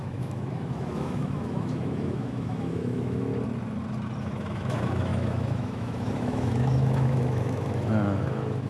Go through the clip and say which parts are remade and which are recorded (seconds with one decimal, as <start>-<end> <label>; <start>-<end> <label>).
0.0-3.3 remade; 3.3-4.2 recorded; 4.2-8.7 remade